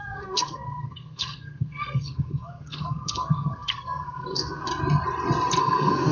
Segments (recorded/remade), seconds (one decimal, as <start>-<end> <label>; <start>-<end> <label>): 0.0-4.7 remade; 4.7-5.6 recorded; 5.6-6.1 remade